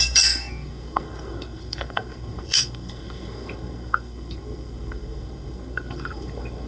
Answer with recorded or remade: remade